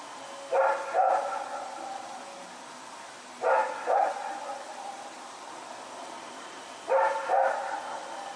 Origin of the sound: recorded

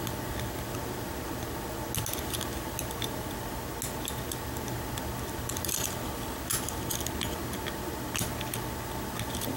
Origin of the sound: recorded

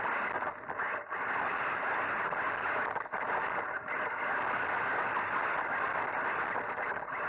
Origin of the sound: recorded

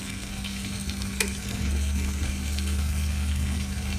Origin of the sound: remade